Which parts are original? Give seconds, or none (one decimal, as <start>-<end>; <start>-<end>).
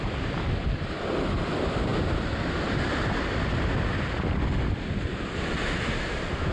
0.0-6.5